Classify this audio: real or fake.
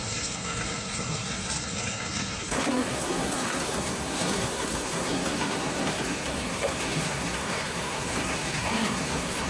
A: fake